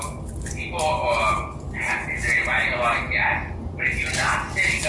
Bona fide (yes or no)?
yes